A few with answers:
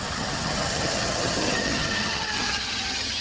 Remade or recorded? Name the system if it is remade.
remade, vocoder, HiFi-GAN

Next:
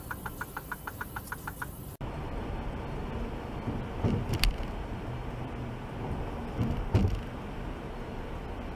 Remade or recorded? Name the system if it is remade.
recorded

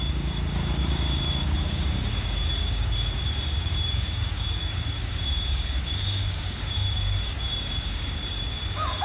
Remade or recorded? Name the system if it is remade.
remade, codec, DAC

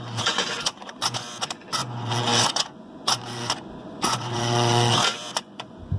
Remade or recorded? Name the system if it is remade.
remade, vocoder, Vocos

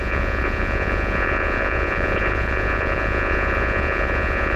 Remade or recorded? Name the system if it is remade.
remade, vocoder, Vocos